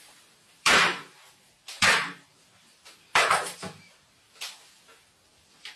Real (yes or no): no